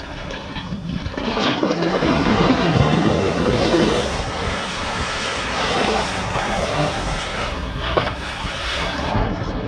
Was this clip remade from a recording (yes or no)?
yes